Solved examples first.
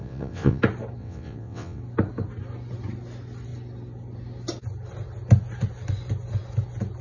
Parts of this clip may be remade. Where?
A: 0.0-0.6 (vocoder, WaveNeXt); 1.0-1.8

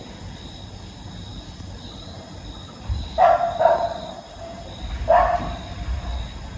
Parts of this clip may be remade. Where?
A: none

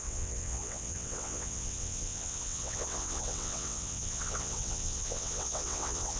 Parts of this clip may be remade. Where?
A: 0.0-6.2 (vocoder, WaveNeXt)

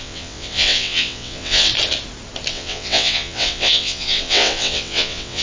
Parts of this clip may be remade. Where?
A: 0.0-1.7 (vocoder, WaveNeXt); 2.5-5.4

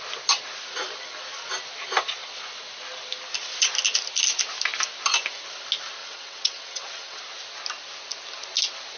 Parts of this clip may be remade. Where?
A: 6.0-7.2 (vocoder, WaveNeXt)

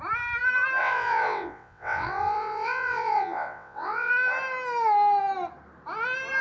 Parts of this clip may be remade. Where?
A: 0.8-4.1 (vocoder, WaveNeXt)

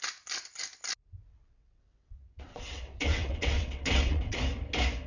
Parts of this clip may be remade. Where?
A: 1.3-4.4 (vocoder, WaveNeXt)

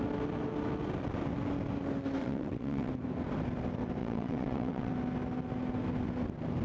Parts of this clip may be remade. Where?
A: 2.2-2.9 (vocoder, WaveNeXt); 4.0-4.9